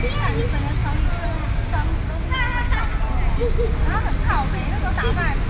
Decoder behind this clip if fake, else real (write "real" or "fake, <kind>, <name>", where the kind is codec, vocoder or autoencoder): real